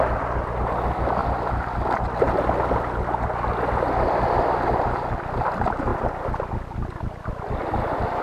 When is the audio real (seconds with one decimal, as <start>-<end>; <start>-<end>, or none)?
0.0-8.2